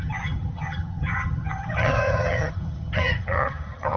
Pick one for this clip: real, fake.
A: fake